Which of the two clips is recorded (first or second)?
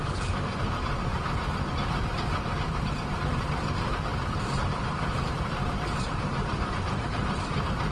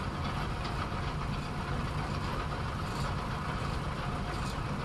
second